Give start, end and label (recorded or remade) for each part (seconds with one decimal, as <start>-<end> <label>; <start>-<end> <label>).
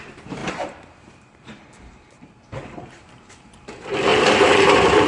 0.0-0.4 recorded; 0.4-3.5 remade; 3.5-4.1 recorded; 4.1-5.1 remade